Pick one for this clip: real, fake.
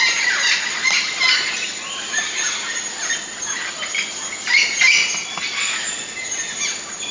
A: real